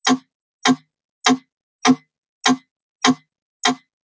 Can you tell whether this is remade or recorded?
recorded